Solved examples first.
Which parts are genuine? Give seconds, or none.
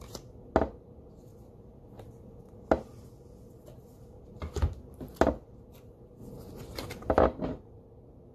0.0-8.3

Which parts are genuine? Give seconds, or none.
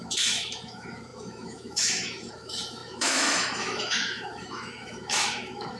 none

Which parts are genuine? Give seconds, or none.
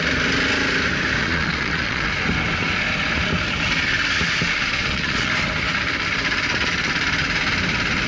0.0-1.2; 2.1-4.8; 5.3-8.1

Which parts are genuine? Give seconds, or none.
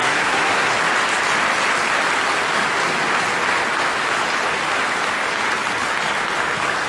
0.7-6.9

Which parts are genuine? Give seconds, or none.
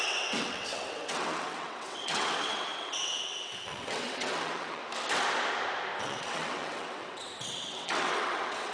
4.8-6.0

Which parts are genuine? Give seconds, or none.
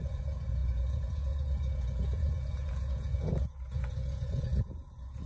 none